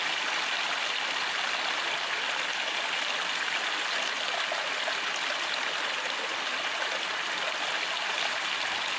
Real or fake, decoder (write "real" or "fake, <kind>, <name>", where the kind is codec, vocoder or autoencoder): real